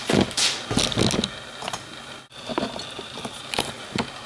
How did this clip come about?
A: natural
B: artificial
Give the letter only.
A